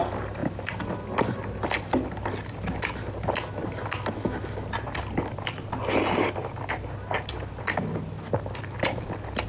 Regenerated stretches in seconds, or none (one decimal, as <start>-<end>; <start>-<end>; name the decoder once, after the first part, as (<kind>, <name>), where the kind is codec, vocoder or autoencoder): none

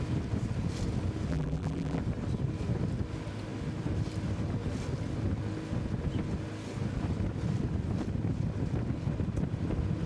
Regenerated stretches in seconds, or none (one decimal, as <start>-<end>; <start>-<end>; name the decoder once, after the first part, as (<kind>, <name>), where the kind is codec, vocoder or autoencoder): 1.3-2.0 (vocoder, BigVGAN v2)

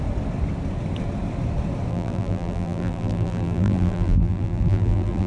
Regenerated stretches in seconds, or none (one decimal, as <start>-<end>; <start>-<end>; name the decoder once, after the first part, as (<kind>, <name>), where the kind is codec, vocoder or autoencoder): 1.9-5.3 (vocoder, BigVGAN v2)

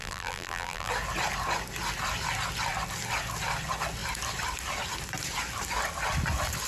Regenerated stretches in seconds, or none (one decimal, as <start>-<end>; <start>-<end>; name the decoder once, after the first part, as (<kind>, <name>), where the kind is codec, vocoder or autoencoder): 0.0-0.9 (vocoder, BigVGAN v2)

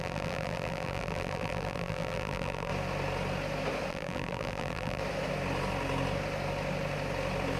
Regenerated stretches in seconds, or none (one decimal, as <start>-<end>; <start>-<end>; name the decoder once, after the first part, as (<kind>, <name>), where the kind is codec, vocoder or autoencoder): 0.0-2.7 (vocoder, BigVGAN v2); 3.9-5.0

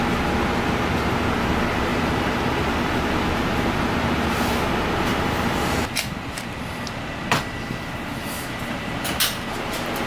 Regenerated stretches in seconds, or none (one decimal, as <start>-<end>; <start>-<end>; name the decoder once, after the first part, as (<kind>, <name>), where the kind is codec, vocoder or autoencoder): 1.9-3.3 (vocoder, BigVGAN v2); 5.1-9.7

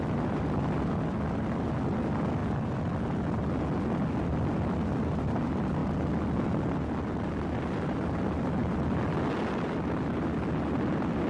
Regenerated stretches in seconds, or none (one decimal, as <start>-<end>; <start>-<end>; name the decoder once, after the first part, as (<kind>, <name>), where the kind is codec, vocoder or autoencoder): 0.0-2.4 (vocoder, BigVGAN v2); 5.0-5.8; 7.4-11.3

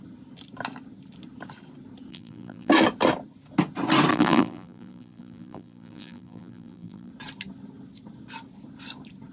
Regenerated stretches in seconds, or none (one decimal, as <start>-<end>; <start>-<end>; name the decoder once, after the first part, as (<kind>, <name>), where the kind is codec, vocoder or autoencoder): 2.1-2.7 (vocoder, BigVGAN v2); 4.1-7.1